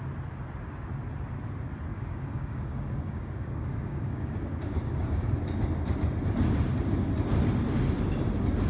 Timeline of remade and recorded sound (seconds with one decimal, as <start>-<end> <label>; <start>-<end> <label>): 0.0-1.9 recorded; 1.9-5.4 remade; 5.4-8.7 recorded